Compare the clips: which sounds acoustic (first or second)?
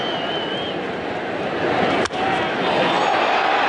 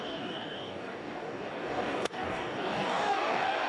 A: first